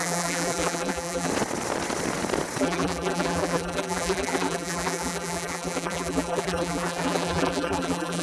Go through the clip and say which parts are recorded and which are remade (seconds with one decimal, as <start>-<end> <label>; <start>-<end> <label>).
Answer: 0.0-1.3 remade; 1.3-2.6 recorded; 2.6-8.2 remade